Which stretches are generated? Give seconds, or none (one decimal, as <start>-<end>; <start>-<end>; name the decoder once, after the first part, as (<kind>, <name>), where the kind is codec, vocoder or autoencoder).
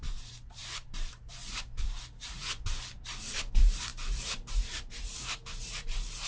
0.0-2.4 (vocoder, BigVGAN v2); 3.5-6.3